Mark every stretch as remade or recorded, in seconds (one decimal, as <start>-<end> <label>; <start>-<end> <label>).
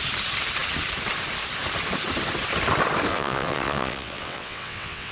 0.0-3.1 recorded; 3.1-5.1 remade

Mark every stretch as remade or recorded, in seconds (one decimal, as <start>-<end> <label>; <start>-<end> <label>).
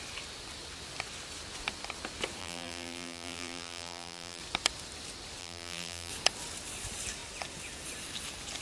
0.0-2.4 recorded; 2.4-4.4 remade; 4.4-5.4 recorded; 5.4-6.1 remade; 6.1-8.6 recorded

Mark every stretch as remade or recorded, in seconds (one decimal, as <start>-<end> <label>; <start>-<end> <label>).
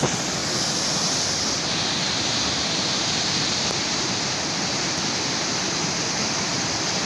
0.0-7.1 remade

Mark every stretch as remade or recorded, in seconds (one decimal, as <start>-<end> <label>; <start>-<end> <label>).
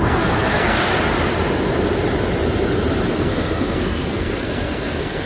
0.0-0.9 remade; 0.9-3.1 recorded; 3.1-5.3 remade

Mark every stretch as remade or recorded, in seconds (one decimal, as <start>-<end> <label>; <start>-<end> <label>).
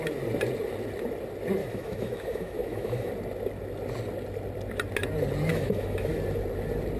0.0-1.6 recorded; 1.6-3.1 remade; 3.1-5.5 recorded; 5.5-6.1 remade; 6.1-7.0 recorded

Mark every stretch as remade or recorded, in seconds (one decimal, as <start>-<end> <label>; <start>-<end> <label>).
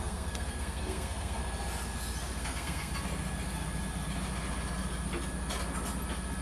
0.0-1.4 remade; 1.4-2.4 recorded; 2.4-2.9 remade; 2.9-6.4 recorded